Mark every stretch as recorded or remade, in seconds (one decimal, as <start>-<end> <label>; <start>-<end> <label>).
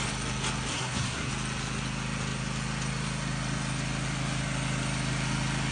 0.0-0.7 recorded; 0.7-1.3 remade; 1.3-5.7 recorded